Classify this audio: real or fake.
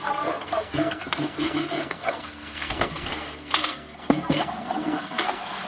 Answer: fake